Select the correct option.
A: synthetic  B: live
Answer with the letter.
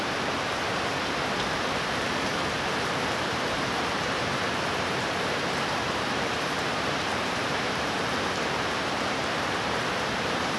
A